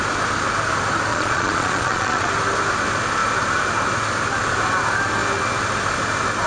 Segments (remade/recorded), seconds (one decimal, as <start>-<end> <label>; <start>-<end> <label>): 0.0-1.1 recorded; 1.1-2.3 remade; 2.3-6.5 recorded